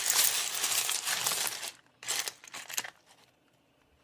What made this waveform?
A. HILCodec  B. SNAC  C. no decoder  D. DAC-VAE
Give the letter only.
C